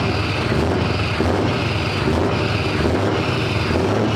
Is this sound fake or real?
real